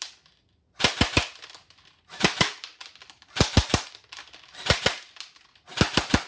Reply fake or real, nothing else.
real